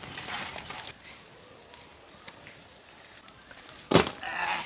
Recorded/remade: recorded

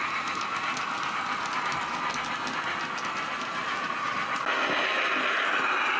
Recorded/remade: recorded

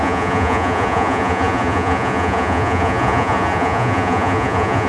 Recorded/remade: remade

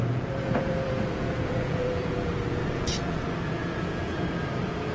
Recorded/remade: remade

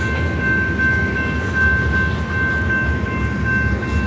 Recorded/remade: recorded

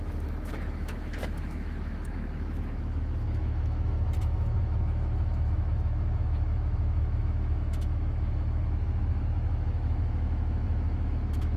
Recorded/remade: remade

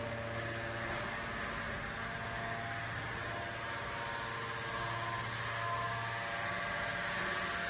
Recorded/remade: recorded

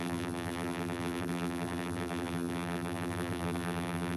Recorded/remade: remade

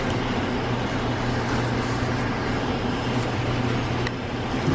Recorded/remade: recorded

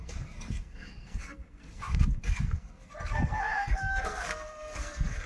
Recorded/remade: remade